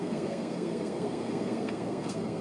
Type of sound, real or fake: fake